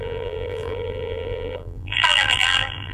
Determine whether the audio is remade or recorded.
remade